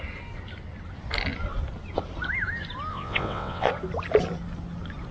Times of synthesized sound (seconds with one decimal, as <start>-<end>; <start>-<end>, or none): 2.9-3.7